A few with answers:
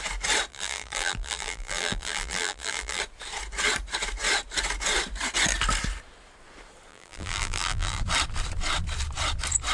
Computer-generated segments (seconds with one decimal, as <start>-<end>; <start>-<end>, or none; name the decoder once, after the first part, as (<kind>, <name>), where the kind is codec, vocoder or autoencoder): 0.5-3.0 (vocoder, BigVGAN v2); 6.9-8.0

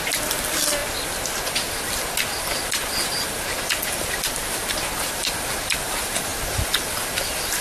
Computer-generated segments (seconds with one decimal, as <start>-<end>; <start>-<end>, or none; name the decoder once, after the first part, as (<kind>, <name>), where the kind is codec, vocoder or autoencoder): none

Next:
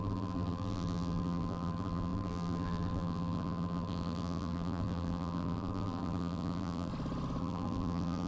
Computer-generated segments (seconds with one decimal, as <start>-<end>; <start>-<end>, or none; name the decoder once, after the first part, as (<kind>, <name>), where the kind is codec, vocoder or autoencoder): 0.0-6.9 (vocoder, BigVGAN v2); 7.4-8.3

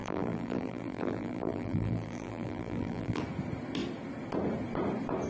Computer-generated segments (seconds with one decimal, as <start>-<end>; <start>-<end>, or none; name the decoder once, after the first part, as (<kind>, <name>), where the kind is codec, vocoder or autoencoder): 0.0-3.2 (vocoder, BigVGAN v2)

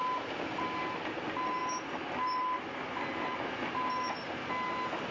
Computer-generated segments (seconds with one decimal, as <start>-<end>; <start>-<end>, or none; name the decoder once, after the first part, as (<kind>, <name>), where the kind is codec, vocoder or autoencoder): none

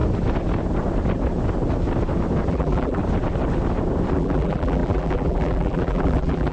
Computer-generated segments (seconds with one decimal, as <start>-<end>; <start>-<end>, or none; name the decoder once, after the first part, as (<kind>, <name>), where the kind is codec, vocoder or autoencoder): 2.5-3.0 (vocoder, BigVGAN v2); 4.1-6.5

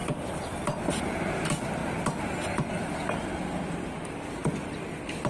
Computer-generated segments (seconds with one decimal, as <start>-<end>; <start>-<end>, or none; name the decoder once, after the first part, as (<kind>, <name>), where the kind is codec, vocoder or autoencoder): 0.0-1.0 (vocoder, BigVGAN v2); 4.4-5.3